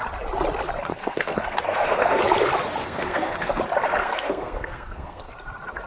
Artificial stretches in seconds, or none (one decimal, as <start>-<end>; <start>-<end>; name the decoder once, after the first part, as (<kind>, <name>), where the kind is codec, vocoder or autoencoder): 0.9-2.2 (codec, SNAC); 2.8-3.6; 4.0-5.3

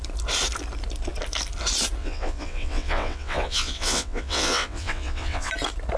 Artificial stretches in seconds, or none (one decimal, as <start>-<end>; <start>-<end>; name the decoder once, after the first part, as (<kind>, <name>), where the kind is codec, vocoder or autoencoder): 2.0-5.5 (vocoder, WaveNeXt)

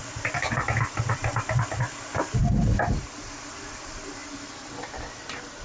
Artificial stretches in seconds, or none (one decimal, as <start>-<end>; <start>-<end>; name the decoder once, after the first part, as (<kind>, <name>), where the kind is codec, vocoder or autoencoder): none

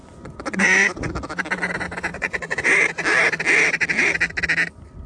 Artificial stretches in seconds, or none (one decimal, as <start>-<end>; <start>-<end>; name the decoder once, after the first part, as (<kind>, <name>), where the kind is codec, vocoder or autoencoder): 0.0-1.1 (vocoder, Vocos); 2.1-2.8

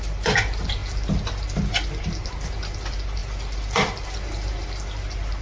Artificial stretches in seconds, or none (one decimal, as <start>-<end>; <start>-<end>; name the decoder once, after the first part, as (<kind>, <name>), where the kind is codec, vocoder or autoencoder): none